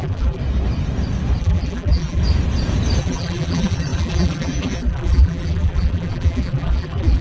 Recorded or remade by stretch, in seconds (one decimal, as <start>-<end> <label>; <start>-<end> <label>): 0.0-0.4 remade; 0.4-1.4 recorded; 1.4-2.2 remade; 2.2-3.0 recorded; 3.0-7.2 remade